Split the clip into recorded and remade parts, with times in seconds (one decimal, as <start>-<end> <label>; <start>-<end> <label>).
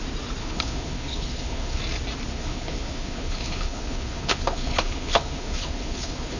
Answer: 0.0-0.4 recorded; 0.4-1.8 remade; 1.8-2.3 recorded; 2.3-6.4 remade